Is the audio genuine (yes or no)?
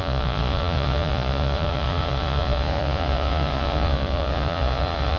no